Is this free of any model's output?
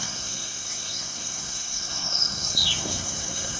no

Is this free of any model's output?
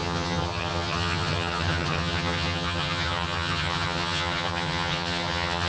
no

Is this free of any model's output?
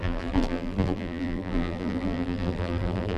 no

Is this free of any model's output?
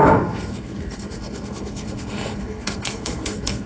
no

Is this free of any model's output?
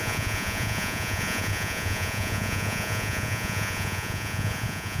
no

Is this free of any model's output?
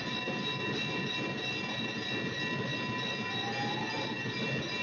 yes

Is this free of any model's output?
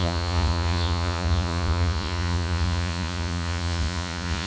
no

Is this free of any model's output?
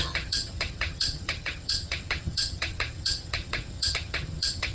no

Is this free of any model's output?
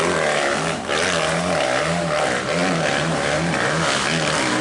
yes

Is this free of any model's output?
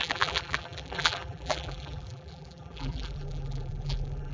no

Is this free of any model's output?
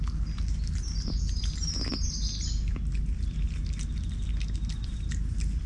yes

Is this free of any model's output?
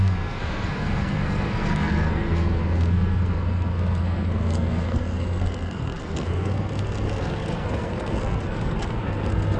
no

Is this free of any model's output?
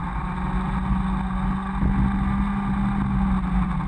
yes